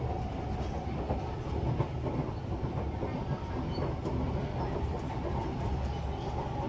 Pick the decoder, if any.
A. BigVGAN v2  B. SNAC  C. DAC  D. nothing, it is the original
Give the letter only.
D